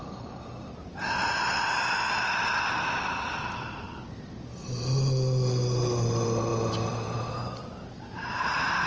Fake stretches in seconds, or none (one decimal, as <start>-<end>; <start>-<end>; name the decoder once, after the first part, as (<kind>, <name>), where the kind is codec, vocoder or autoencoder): none